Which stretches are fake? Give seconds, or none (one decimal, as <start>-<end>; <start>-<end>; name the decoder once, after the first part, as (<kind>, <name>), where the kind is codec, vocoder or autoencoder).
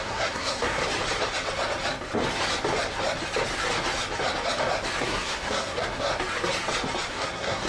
0.0-0.8 (codec, SNAC); 5.0-6.1; 7.1-7.7